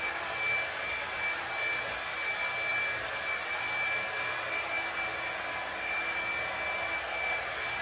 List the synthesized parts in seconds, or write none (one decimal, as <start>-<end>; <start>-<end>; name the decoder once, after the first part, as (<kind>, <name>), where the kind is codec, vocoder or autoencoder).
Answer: none